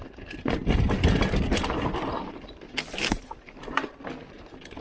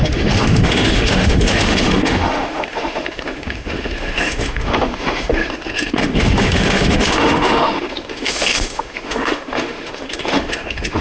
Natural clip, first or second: first